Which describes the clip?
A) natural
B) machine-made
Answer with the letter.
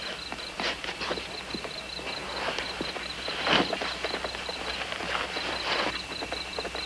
A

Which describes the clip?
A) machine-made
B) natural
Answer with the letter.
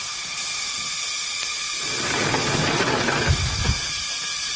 B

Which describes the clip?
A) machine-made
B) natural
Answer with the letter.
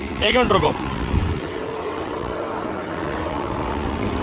A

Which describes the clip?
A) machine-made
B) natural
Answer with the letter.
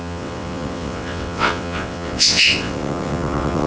A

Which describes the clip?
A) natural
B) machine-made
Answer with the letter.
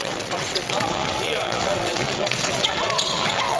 B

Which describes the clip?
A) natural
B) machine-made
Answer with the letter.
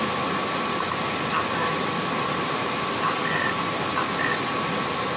A